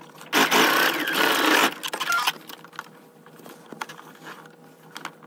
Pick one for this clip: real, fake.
real